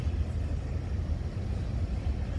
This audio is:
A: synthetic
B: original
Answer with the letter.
B